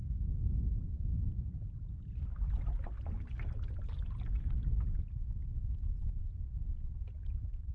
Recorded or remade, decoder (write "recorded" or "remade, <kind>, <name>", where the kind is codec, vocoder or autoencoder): recorded